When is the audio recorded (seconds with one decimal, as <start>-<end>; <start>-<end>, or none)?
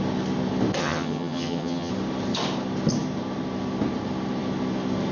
0.0-0.8; 1.9-5.1